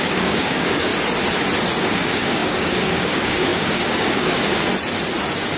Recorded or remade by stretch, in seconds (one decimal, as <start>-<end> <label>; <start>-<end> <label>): 0.0-0.9 remade; 0.9-1.8 recorded; 1.8-4.7 remade; 4.7-5.6 recorded